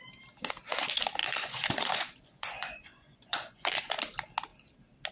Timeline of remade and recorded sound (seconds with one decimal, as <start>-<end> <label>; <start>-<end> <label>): 0.0-1.2 recorded; 1.2-3.8 remade; 3.8-5.1 recorded